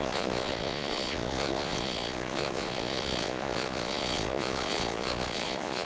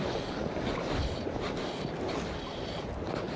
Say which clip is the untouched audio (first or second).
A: second